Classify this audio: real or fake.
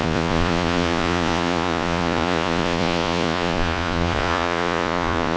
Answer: fake